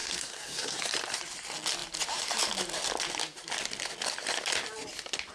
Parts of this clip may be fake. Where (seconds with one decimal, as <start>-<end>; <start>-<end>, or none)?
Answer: 0.0-0.8